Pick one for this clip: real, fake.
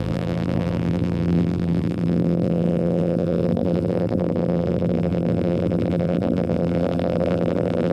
fake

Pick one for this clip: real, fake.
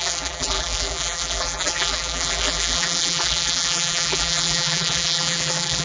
fake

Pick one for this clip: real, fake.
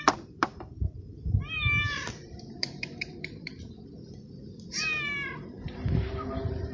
fake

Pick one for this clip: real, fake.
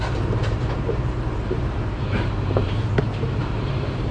fake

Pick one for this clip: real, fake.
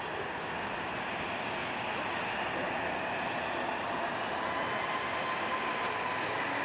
real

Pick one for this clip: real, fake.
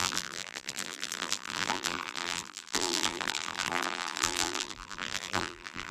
fake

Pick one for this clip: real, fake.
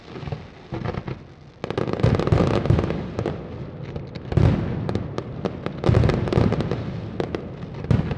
real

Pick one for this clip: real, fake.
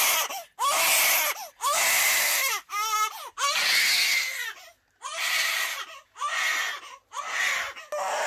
real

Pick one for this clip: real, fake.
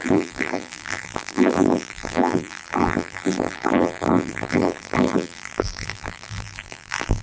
fake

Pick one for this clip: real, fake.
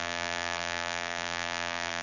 fake